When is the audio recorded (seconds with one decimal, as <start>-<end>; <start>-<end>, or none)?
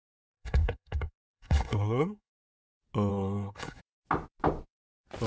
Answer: 2.6-3.1; 3.8-5.3